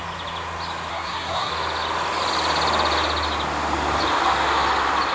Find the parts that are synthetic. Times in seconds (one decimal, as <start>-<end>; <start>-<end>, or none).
0.9-1.5